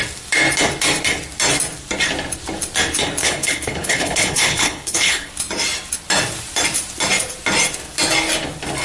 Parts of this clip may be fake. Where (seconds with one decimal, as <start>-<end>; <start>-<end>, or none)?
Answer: 3.2-5.3